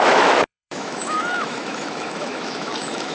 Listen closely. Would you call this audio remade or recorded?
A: remade